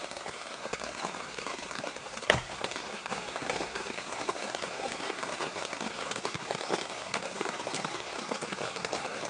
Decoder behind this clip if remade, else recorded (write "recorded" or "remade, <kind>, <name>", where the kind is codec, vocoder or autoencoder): remade, codec, SNAC